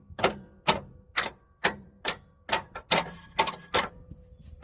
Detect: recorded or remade recorded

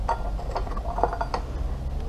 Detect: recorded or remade recorded